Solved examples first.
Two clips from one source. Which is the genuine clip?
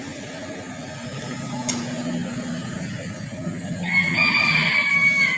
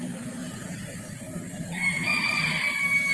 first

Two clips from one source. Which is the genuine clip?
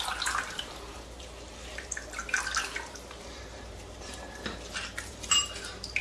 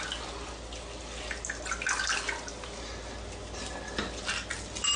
second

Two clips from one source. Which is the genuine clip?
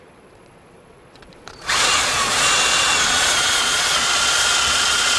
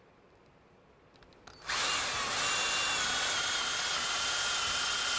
second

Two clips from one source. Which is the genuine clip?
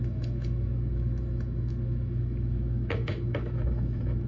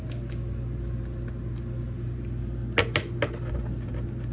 second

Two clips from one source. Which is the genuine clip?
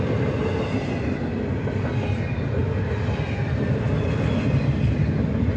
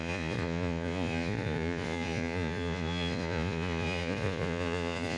first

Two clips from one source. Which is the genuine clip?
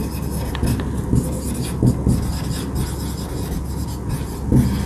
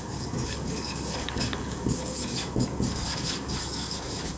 first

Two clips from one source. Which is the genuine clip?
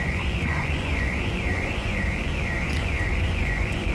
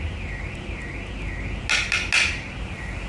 second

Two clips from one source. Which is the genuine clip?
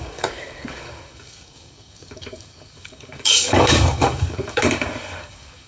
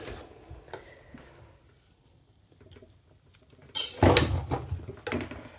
second